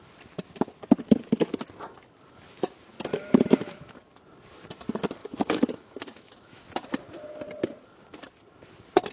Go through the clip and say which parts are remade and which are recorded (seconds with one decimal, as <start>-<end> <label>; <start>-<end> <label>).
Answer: 0.0-3.1 recorded; 3.1-3.9 remade; 3.9-5.2 recorded; 5.2-6.6 remade; 6.6-9.1 recorded